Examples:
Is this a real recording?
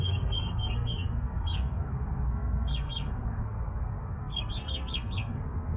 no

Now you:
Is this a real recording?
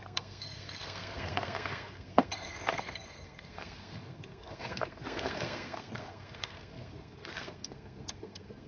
no